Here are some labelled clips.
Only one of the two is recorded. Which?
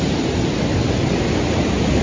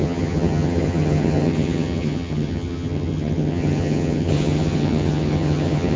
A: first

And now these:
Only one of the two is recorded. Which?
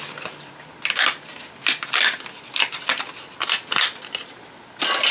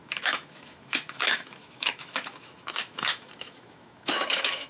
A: first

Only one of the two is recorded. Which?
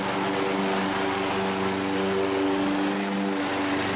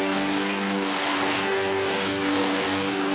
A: first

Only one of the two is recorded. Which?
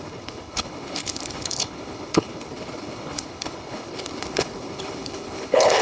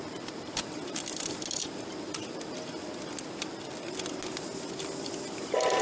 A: second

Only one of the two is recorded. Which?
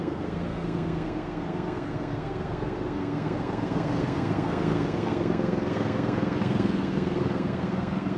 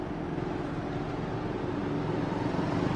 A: second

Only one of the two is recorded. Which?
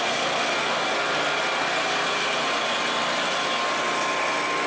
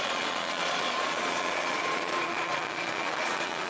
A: first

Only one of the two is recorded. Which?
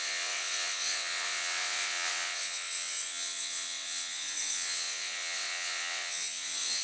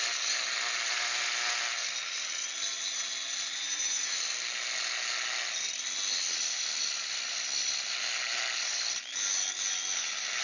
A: second